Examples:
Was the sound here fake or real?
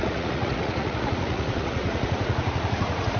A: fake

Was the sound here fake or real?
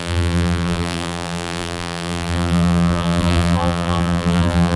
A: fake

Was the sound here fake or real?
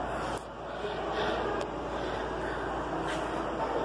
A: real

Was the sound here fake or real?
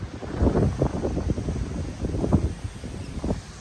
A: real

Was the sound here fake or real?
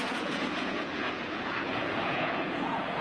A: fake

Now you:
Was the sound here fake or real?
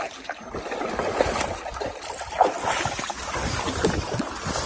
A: real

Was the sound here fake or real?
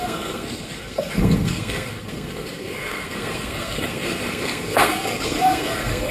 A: fake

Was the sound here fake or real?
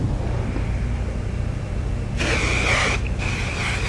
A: fake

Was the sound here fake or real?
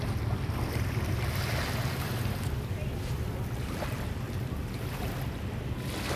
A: real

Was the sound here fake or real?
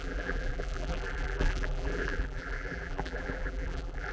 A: fake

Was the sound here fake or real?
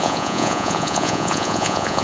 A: fake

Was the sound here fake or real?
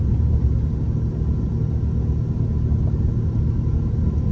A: real